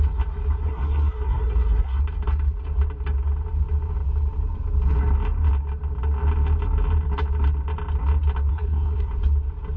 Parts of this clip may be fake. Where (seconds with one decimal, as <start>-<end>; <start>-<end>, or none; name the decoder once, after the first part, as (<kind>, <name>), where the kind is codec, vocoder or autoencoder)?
0.6-2.0 (codec, SNAC); 8.5-9.1